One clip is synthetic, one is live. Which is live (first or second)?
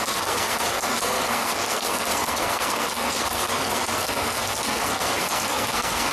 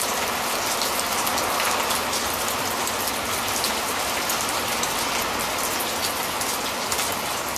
second